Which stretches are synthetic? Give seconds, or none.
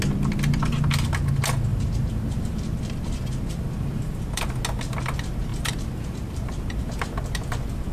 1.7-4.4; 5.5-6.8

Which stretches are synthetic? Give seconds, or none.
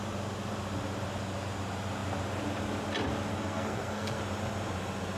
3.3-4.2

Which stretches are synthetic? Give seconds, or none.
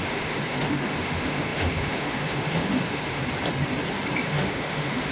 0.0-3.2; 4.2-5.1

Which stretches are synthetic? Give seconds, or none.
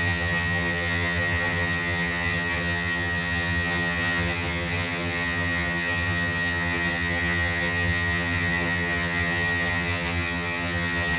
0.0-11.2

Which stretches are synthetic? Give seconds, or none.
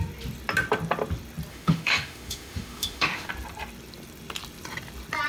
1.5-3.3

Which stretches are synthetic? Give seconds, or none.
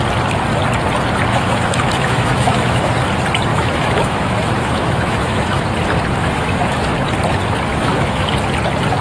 1.3-2.9; 3.5-5.6; 6.2-6.8; 7.7-8.3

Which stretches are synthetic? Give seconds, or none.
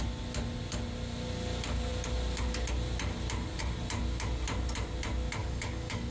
5.4-6.1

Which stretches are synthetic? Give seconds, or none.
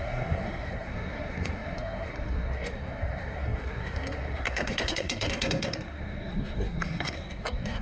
0.0-7.8